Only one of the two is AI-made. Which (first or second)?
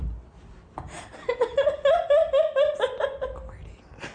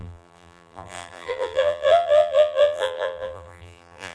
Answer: second